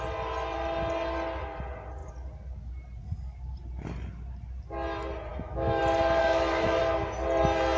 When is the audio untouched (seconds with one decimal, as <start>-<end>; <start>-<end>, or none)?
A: 0.0-5.3; 5.8-6.2; 6.8-7.8